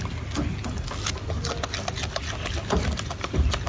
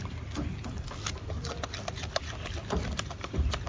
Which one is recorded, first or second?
first